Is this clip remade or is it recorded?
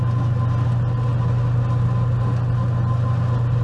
recorded